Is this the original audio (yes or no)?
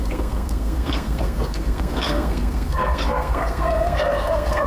no